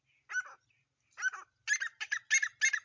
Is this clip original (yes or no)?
yes